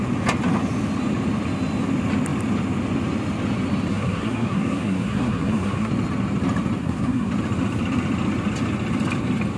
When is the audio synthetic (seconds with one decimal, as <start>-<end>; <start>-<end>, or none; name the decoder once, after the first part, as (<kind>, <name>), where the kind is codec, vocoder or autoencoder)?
3.9-5.9 (codec, SNAC); 6.8-7.3